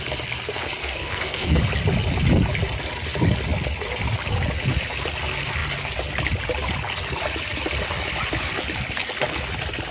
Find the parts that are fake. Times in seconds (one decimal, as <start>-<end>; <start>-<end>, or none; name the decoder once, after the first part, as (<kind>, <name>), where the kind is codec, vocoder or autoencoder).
0.8-1.6 (codec, SNAC)